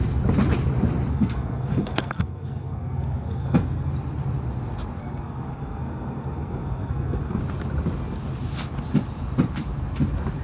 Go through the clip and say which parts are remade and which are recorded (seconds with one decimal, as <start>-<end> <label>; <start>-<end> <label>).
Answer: 0.0-1.1 recorded; 1.1-3.9 remade; 3.9-5.0 recorded; 5.0-7.4 remade; 7.4-10.4 recorded